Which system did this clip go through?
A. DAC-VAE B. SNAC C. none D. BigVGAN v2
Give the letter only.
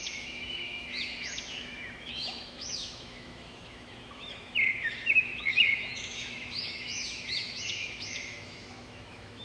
A